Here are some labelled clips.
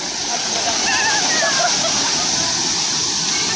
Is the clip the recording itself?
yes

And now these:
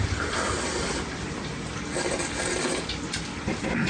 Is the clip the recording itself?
no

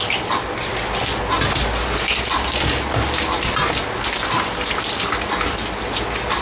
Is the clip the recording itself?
yes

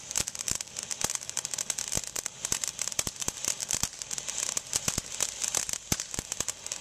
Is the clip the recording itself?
yes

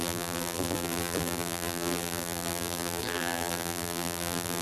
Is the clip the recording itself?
no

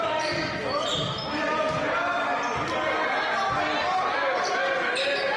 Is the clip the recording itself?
yes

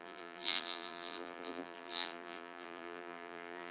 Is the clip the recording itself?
no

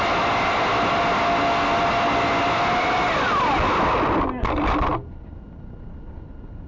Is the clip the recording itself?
yes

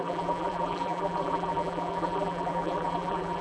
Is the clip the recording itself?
no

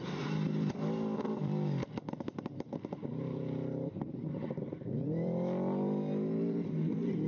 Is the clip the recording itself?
no